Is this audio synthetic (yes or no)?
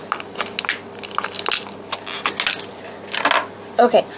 no